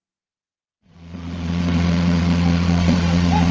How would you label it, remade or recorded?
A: remade